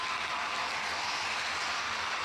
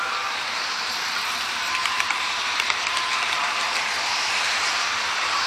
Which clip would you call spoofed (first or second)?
second